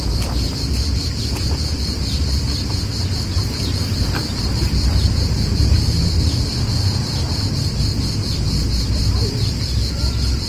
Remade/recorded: remade